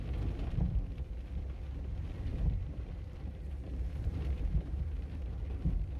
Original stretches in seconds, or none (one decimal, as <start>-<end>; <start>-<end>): 0.0-2.3; 5.3-6.0